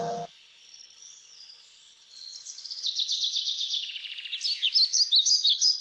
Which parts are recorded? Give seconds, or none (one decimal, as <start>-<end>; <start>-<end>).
4.0-5.2